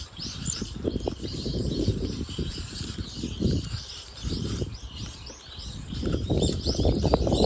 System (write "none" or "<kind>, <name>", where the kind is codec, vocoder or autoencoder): vocoder, BigVGAN v2